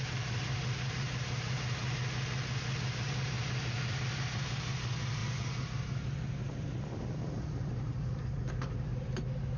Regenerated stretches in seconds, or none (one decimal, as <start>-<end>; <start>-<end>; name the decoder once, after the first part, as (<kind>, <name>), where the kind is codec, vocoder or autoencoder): 0.0-2.0 (vocoder, BigVGAN v2); 2.8-9.6